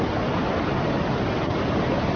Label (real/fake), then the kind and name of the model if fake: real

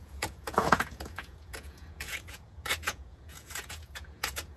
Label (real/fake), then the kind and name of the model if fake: fake, vocoder, Vocos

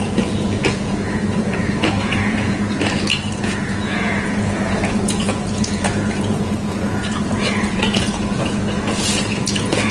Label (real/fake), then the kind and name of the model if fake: fake, vocoder, Vocos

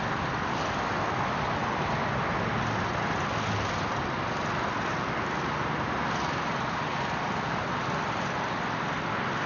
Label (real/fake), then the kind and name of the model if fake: real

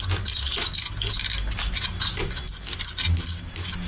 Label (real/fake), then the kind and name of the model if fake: real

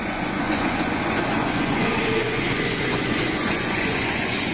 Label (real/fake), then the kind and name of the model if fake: fake, vocoder, Vocos